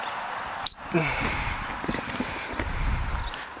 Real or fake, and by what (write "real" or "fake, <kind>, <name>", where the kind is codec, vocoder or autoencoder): real